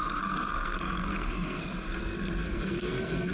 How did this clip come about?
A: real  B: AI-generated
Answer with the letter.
B